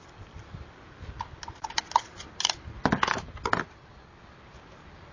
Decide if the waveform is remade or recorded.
recorded